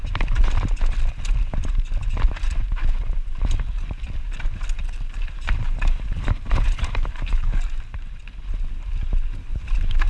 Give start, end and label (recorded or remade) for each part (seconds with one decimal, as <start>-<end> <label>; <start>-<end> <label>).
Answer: 0.0-4.8 recorded; 4.8-8.2 remade; 8.2-9.5 recorded; 9.5-10.1 remade